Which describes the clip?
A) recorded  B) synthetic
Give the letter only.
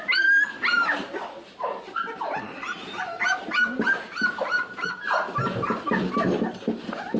A